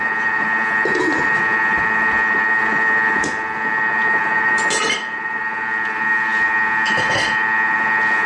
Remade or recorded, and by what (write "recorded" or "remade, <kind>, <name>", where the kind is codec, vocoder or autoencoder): remade, vocoder, BigVGAN v2